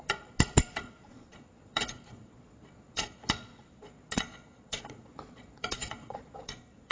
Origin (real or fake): fake